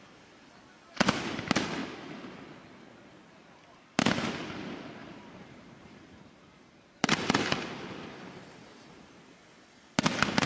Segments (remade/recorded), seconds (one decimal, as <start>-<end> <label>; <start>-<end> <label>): 0.0-5.0 recorded; 5.0-9.4 remade; 9.4-10.5 recorded

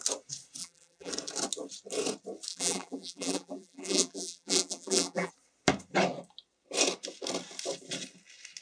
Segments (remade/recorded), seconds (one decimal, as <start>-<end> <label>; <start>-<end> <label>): 0.0-0.6 recorded; 0.6-1.1 remade; 1.1-2.5 recorded; 2.5-5.3 remade; 5.3-8.6 recorded

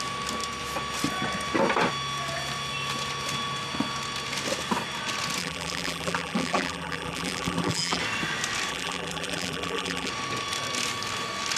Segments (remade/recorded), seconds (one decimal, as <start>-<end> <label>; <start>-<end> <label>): 0.0-5.4 recorded; 5.4-8.0 remade; 8.0-8.7 recorded; 8.7-10.1 remade; 10.1-11.6 recorded

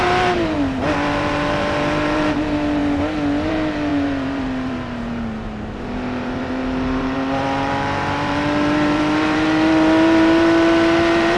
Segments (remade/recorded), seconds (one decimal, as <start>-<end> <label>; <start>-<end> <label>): 0.0-2.8 remade; 2.8-3.5 recorded; 3.5-11.4 remade

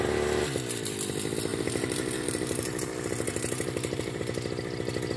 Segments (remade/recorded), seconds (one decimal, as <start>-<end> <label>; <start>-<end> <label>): 0.0-1.5 recorded; 1.5-4.2 remade; 4.2-5.2 recorded

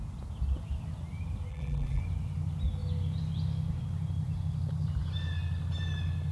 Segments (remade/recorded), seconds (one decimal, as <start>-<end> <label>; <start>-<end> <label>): 0.0-1.5 recorded; 1.5-2.0 remade; 2.0-6.3 recorded

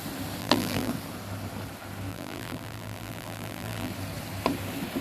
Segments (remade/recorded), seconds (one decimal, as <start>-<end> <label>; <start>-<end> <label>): 0.0-0.4 recorded; 0.4-0.9 remade; 0.9-2.1 recorded; 2.1-3.9 remade; 3.9-5.0 recorded